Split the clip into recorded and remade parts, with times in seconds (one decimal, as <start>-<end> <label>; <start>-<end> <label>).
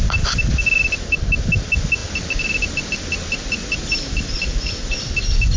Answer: 0.0-5.6 recorded